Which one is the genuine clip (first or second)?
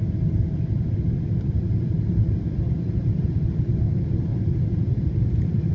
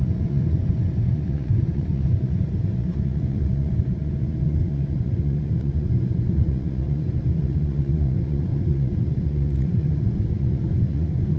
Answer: first